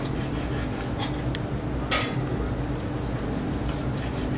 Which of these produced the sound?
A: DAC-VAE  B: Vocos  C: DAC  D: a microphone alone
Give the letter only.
D